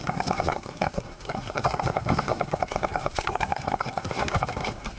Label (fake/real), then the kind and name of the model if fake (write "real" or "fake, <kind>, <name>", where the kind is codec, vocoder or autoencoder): fake, codec, SNAC